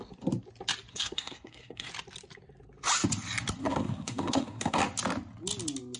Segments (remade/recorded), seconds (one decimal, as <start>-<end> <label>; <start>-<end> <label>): 0.0-0.9 recorded; 0.9-1.9 remade; 1.9-3.6 recorded; 3.6-4.8 remade; 4.8-6.0 recorded